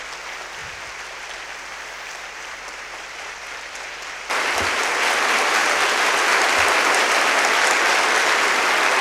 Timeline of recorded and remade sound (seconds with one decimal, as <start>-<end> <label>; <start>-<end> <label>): 0.0-0.6 recorded; 0.6-4.8 remade; 4.8-5.6 recorded; 5.6-7.3 remade; 7.3-9.0 recorded